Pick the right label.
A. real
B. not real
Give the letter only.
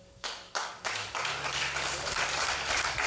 B